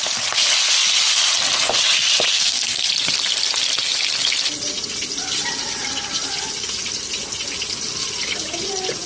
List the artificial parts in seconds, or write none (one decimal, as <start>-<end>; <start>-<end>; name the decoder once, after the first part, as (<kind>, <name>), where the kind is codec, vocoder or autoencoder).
2.3-2.9 (codec, SNAC)